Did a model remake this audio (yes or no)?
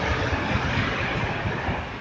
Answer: no